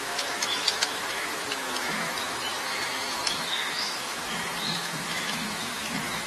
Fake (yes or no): yes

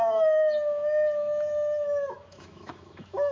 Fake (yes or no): yes